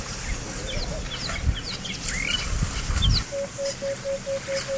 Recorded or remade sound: recorded